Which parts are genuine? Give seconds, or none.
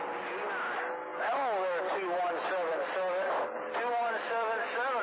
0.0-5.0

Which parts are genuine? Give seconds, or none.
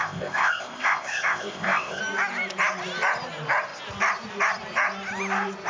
2.0-5.7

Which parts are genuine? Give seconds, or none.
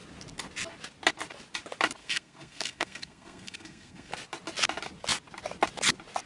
0.0-2.0; 4.1-6.3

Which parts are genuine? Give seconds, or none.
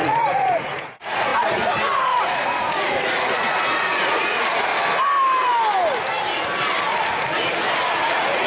4.7-8.0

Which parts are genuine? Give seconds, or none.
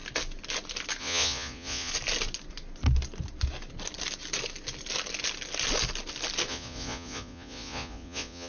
0.0-1.0; 1.9-6.5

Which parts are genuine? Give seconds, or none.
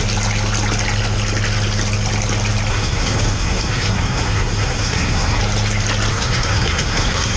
0.0-2.7; 5.4-6.1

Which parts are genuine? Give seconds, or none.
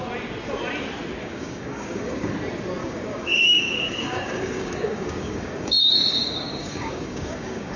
0.0-1.2; 2.3-2.8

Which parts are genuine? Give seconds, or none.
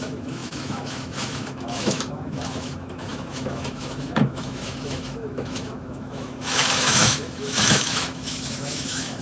none